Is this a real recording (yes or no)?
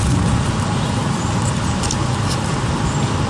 yes